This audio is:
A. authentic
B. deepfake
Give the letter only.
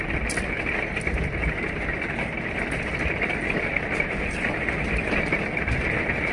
A